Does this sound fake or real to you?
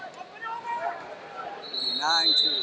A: real